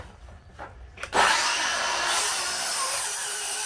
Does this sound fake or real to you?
fake